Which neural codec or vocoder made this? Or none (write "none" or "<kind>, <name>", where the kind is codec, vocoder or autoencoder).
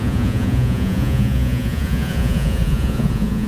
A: vocoder, Vocos